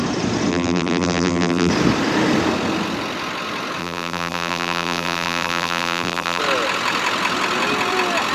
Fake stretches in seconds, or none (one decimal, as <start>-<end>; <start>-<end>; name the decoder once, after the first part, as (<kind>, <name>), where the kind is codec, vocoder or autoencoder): 0.5-1.7 (vocoder, BigVGAN v2); 3.8-6.4